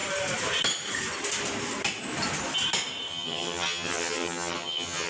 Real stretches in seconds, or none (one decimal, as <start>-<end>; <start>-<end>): 0.0-3.1